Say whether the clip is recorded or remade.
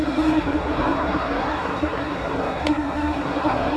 remade